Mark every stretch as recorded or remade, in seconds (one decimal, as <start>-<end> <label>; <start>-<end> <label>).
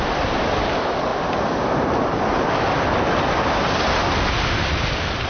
0.0-5.3 recorded